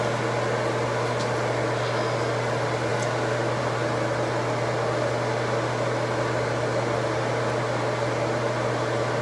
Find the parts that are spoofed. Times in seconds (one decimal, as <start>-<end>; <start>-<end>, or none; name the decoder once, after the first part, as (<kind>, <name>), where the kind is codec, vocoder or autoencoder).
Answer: none